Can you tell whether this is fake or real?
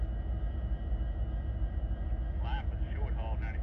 real